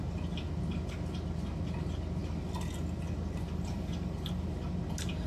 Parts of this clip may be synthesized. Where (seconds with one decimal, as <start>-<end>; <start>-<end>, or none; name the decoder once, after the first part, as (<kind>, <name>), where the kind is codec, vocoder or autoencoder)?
none